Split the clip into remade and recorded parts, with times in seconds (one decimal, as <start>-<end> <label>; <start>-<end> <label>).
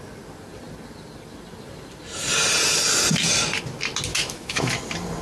0.0-4.1 recorded; 4.1-4.7 remade; 4.7-5.2 recorded